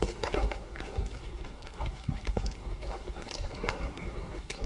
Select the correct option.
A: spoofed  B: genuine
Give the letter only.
A